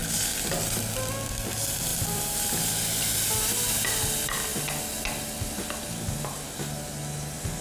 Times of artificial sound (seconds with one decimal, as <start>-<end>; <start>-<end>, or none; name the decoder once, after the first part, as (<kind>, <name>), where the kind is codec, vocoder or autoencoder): 1.9-2.8 (vocoder, BigVGAN v2)